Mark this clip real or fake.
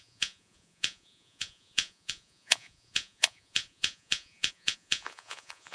fake